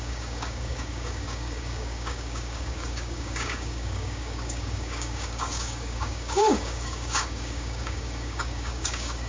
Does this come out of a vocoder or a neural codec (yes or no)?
yes